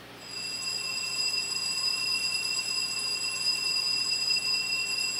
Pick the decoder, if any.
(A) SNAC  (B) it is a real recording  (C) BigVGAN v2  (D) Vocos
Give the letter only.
C